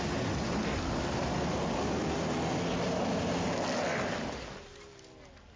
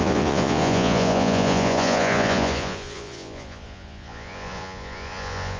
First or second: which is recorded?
first